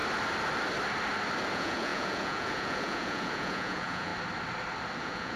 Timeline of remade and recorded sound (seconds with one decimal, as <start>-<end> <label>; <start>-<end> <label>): 0.0-1.5 recorded; 1.5-4.1 remade; 4.1-5.0 recorded; 5.0-5.4 remade